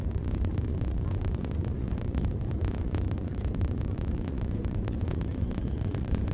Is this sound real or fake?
fake